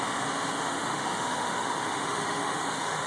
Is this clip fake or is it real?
fake